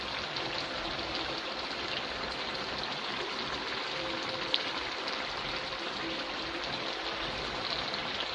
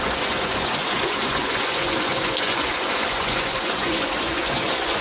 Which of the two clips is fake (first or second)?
second